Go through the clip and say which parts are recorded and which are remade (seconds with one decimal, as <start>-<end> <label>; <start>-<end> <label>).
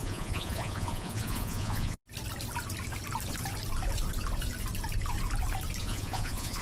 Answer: 0.0-2.0 remade; 2.0-5.8 recorded; 5.8-6.6 remade